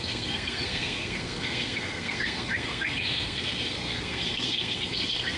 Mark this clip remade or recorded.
remade